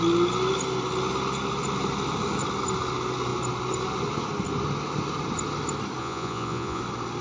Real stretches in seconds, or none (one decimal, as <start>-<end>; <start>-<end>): 0.0-6.0; 6.8-7.2